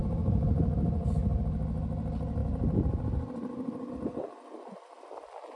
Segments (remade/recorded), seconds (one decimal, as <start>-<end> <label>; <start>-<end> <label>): 0.0-1.4 remade; 1.4-2.4 recorded; 2.4-3.9 remade; 3.9-5.6 recorded